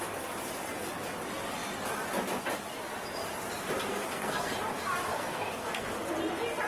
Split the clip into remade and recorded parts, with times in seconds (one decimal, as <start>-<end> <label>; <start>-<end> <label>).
0.0-3.9 recorded; 3.9-4.5 remade; 4.5-5.1 recorded; 5.1-5.9 remade; 5.9-6.7 recorded